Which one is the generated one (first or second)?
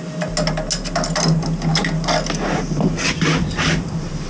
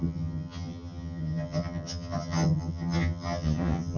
second